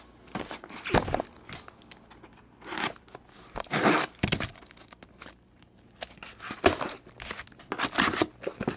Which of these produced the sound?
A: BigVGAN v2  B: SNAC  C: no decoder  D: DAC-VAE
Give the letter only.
C